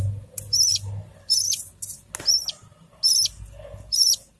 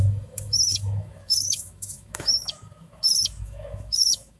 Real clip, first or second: first